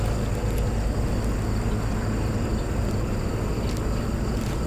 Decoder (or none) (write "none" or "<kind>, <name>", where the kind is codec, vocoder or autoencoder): none